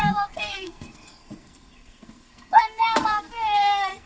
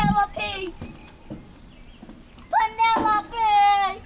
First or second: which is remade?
first